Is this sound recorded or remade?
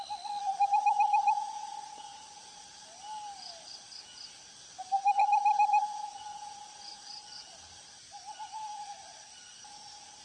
recorded